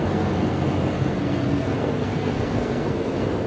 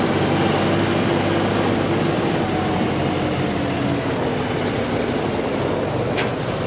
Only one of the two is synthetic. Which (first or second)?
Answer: first